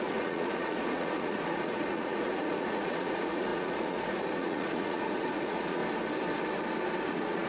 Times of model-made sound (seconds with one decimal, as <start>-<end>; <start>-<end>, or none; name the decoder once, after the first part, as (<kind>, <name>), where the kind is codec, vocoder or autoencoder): 0.0-5.8 (vocoder, Vocos); 7.0-7.5